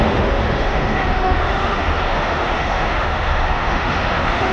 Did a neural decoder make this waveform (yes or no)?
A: yes